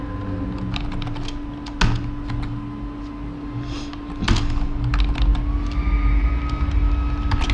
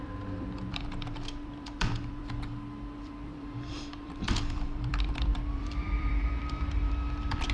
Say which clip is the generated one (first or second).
second